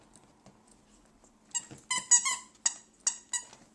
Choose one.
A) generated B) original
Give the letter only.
B